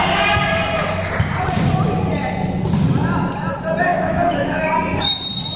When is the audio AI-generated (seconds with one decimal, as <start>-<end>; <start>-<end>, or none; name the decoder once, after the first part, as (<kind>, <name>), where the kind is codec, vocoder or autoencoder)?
3.9-4.6 (autoencoder, DAC-VAE)